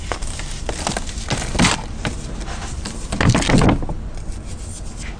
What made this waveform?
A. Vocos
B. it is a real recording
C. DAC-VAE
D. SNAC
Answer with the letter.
B